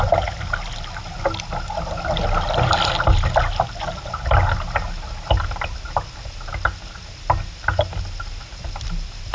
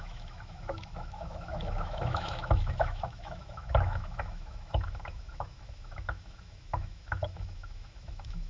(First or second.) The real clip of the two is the first